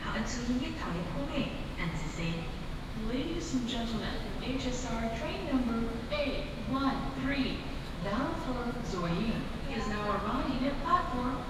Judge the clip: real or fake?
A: fake